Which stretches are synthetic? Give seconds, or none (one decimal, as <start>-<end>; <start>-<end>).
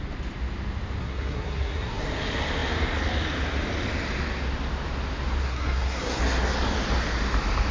1.0-2.0; 5.4-6.2